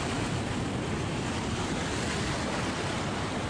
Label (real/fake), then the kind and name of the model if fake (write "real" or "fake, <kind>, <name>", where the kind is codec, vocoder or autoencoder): real